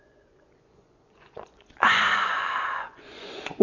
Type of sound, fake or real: fake